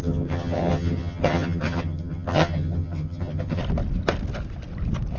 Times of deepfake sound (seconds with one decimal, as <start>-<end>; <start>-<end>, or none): 0.0-3.6